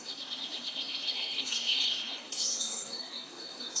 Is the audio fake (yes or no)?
yes